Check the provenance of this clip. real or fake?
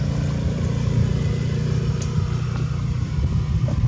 real